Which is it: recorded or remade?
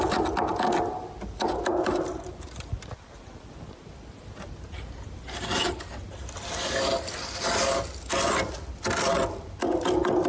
recorded